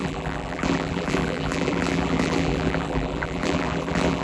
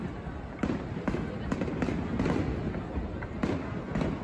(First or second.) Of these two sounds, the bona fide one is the second